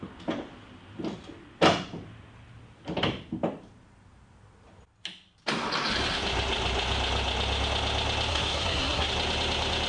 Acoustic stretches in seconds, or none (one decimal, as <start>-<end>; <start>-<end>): 0.0-8.3; 9.1-9.9